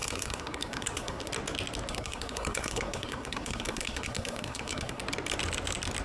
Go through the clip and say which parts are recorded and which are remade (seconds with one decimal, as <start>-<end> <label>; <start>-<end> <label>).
0.0-1.3 remade; 1.3-1.9 recorded; 1.9-5.0 remade; 5.0-6.0 recorded